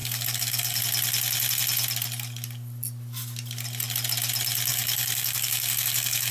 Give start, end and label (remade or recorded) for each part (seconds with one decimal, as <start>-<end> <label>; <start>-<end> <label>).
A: 0.0-0.8 remade; 0.8-4.7 recorded; 4.7-6.3 remade